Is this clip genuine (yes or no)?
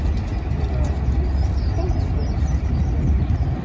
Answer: yes